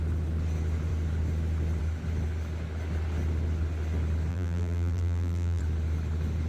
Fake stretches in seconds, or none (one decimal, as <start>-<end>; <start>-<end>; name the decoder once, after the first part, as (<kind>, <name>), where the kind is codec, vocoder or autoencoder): 4.3-5.6 (vocoder, BigVGAN v2)